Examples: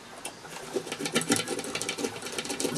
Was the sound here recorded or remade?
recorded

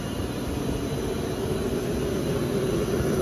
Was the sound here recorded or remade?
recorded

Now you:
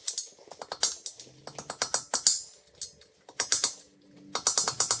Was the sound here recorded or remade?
recorded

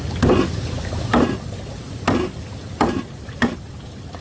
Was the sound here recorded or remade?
recorded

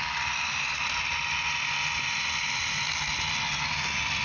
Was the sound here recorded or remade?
recorded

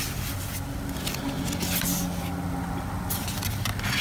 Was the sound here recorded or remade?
recorded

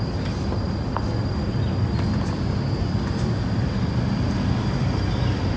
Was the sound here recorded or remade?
recorded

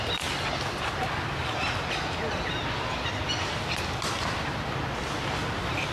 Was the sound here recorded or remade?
recorded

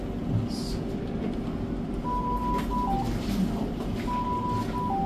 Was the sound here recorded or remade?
recorded